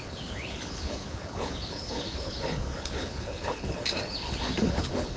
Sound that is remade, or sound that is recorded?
remade